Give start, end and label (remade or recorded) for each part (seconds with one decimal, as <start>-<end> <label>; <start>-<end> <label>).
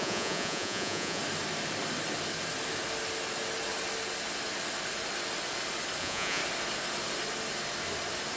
0.0-1.2 remade; 1.2-6.0 recorded; 6.0-6.4 remade; 6.4-8.4 recorded